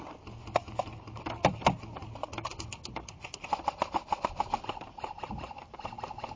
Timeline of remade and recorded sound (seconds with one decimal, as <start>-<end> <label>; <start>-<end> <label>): 0.0-6.4 recorded